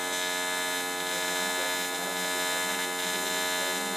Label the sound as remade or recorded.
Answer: recorded